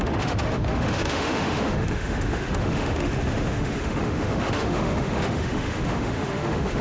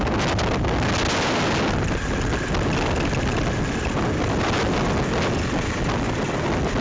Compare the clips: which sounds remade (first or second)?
first